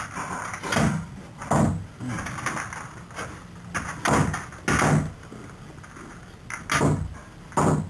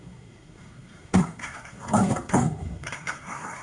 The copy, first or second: second